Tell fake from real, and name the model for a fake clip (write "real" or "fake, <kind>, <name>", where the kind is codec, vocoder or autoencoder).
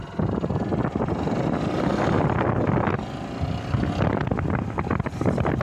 real